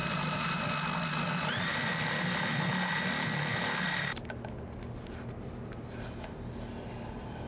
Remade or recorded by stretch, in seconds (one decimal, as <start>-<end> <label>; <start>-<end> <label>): 0.0-0.6 remade; 0.6-7.5 recorded